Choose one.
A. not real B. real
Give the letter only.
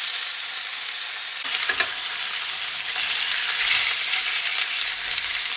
B